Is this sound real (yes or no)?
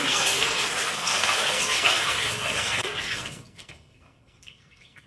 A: no